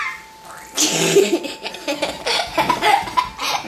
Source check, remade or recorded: recorded